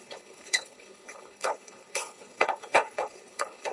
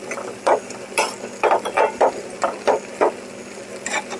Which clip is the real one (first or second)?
second